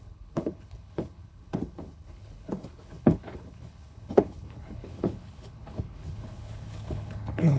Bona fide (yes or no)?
no